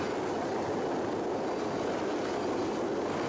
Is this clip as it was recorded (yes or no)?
yes